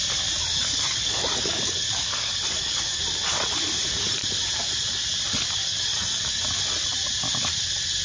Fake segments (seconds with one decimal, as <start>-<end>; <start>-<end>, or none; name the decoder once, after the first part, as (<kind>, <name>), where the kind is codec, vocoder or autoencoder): 0.4-3.0 (codec, DAC); 5.6-6.4